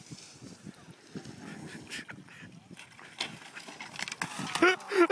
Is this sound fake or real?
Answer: real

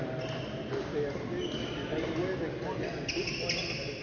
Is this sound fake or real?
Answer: real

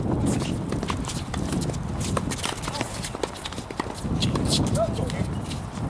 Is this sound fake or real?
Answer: real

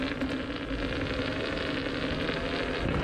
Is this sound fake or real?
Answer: real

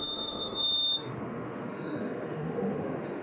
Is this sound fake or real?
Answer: fake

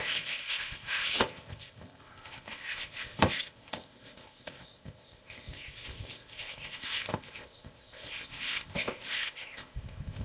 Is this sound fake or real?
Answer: fake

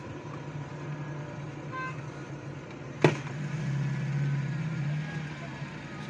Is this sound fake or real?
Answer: real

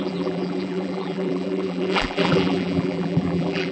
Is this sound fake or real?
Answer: fake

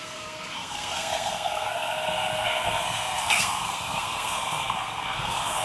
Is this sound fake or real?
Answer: fake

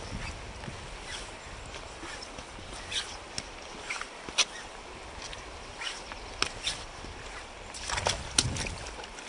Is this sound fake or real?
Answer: real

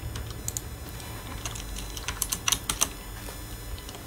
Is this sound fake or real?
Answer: real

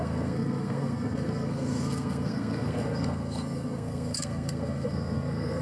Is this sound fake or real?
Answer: fake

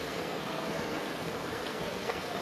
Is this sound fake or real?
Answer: fake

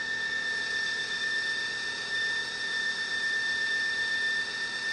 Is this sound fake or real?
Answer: real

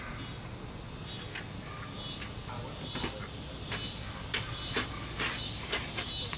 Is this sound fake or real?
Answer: real